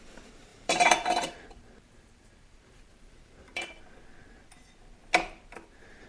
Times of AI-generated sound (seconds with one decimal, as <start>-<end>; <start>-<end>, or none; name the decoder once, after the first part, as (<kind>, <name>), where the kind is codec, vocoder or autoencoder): 0.5-3.8 (vocoder, BigVGAN v2)